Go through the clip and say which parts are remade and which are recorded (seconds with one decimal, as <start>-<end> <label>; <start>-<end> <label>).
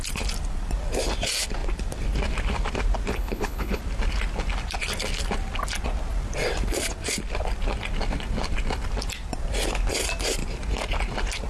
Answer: 0.0-3.1 recorded; 3.1-3.8 remade; 3.8-11.5 recorded